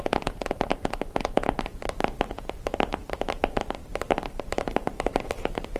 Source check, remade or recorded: remade